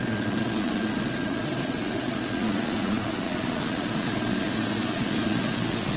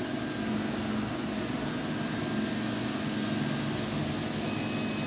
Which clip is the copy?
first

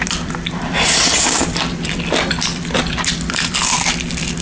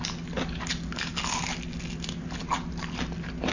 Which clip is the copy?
first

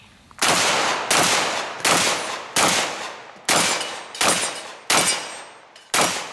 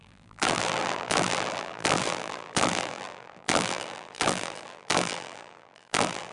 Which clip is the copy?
second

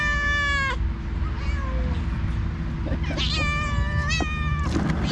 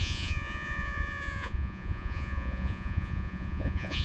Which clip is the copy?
second